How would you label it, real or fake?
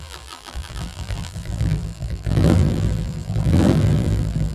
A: fake